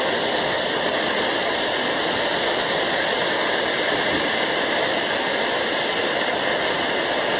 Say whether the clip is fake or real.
real